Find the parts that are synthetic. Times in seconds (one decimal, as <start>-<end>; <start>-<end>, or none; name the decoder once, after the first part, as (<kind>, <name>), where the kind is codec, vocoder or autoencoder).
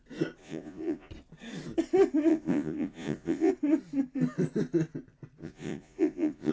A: 0.4-1.1 (vocoder, Vocos); 2.3-3.5; 5.4-6.5